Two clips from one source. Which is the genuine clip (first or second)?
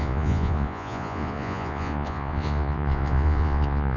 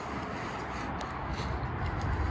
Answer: second